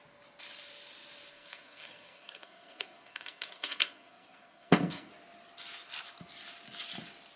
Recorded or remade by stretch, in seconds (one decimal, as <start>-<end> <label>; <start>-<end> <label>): 0.0-1.3 recorded; 1.3-5.1 remade; 5.1-7.4 recorded